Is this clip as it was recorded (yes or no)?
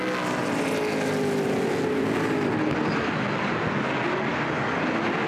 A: yes